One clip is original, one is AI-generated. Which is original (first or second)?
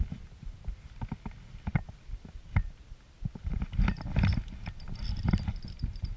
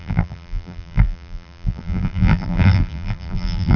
first